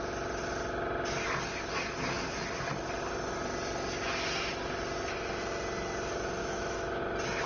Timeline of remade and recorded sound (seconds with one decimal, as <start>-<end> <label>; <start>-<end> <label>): 0.0-6.4 recorded; 6.4-7.0 remade; 7.0-7.5 recorded